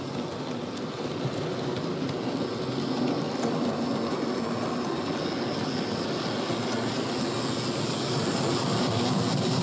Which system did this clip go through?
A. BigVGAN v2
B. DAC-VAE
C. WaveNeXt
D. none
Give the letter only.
D